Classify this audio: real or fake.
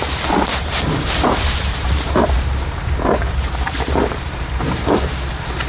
fake